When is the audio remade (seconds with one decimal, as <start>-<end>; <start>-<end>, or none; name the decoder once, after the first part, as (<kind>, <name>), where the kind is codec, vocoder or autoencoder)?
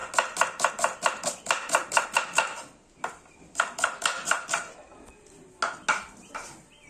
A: 4.2-5.1 (vocoder, BigVGAN v2)